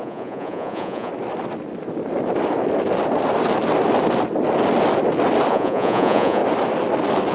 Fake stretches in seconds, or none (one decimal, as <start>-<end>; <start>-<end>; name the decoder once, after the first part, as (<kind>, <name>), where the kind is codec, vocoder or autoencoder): 0.0-1.1 (vocoder, Vocos); 5.5-6.4